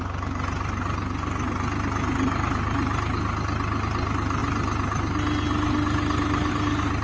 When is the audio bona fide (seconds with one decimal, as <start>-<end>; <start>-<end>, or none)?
0.0-7.0